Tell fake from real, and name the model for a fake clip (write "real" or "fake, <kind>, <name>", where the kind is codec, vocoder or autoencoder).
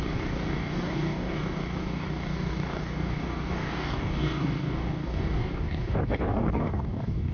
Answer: fake, codec, DAC